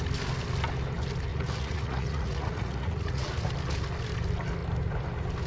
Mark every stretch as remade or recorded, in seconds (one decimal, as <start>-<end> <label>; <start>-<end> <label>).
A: 0.0-1.3 recorded; 1.3-3.3 remade; 3.3-5.5 recorded